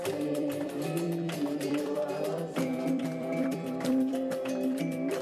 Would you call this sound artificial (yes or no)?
yes